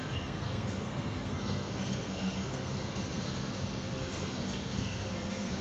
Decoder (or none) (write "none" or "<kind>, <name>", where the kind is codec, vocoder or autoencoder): codec, SNAC